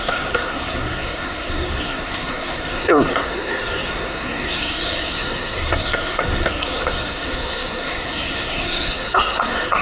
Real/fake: fake